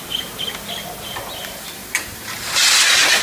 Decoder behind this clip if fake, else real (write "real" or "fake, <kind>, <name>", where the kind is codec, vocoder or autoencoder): real